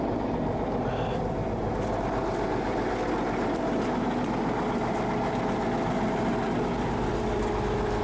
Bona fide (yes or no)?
yes